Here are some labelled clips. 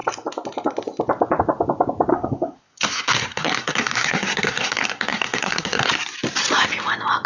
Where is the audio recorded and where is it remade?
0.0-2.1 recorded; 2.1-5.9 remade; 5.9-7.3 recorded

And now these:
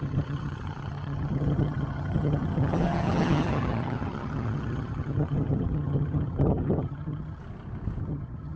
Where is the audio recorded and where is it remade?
0.0-7.4 remade; 7.4-8.0 recorded; 8.0-8.6 remade

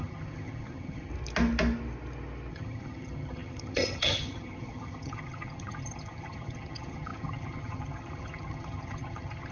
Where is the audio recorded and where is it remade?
0.0-1.1 remade; 1.1-2.5 recorded; 2.5-9.5 remade

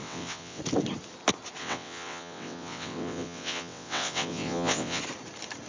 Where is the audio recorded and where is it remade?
0.0-0.6 remade; 0.6-1.6 recorded; 1.6-5.0 remade; 5.0-5.7 recorded

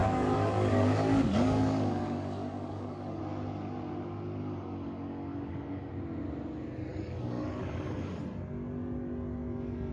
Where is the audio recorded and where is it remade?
0.0-3.2 remade; 3.2-4.4 recorded; 4.4-5.9 remade; 5.9-6.9 recorded; 6.9-8.2 remade; 8.2-9.9 recorded